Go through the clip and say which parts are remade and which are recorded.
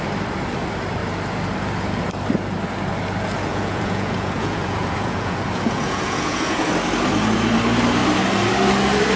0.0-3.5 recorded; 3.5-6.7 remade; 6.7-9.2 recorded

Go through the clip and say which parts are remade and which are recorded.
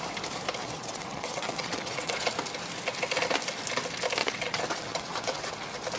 0.0-0.6 recorded; 0.6-2.3 remade; 2.3-4.2 recorded; 4.2-5.5 remade; 5.5-6.0 recorded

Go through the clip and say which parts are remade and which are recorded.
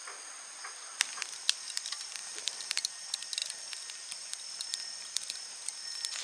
0.0-2.2 recorded; 2.2-2.7 remade; 2.7-6.2 recorded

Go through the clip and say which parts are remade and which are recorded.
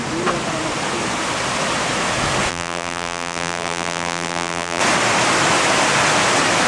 0.0-2.5 recorded; 2.5-4.8 remade; 4.8-6.7 recorded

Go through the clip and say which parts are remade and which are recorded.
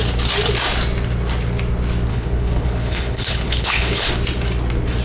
0.0-2.1 recorded; 2.1-4.1 remade; 4.1-5.0 recorded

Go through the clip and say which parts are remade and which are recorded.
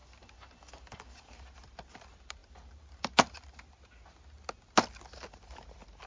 0.0-6.1 recorded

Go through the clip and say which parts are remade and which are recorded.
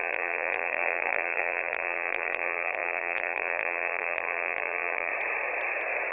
0.0-5.1 remade; 5.1-6.1 recorded